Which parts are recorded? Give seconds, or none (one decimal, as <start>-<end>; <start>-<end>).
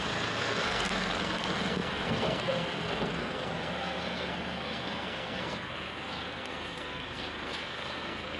none